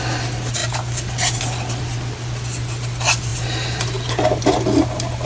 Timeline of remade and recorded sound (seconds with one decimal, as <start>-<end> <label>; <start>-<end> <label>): 0.0-5.3 recorded